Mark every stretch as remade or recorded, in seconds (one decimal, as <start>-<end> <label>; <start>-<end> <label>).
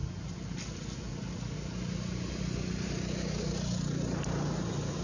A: 0.0-5.0 recorded